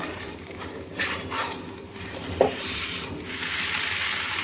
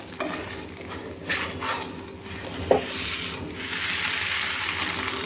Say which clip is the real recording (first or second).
second